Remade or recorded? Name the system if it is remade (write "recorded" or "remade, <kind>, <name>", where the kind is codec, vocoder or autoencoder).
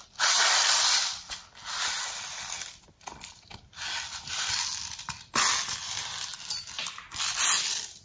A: recorded